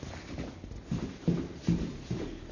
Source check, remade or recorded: recorded